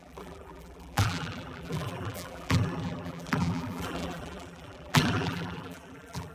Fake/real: fake